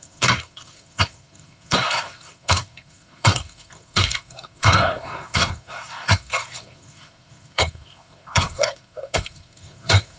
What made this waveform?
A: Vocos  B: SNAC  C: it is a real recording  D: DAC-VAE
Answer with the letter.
B